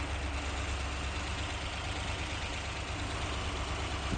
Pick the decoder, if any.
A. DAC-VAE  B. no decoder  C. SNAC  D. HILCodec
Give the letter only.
B